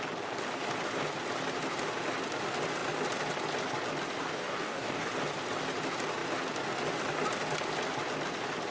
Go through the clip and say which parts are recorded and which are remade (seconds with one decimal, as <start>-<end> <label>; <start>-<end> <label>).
0.0-4.2 recorded; 4.2-5.1 remade; 5.1-8.7 recorded